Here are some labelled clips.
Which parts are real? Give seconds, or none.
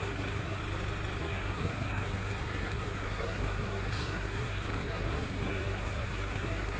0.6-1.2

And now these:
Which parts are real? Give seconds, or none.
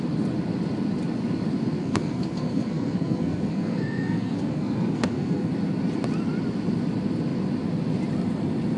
0.0-1.8; 5.5-8.8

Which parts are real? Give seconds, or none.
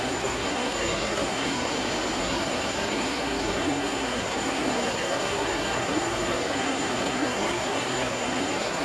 1.7-2.2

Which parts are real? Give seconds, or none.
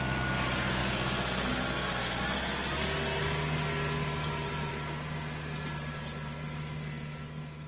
0.0-7.7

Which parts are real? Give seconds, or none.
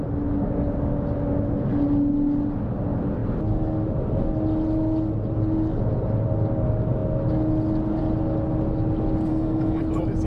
0.0-9.3; 9.8-10.3